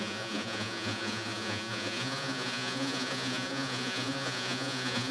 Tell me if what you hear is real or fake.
fake